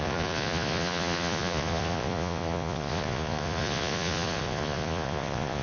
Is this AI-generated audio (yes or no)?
yes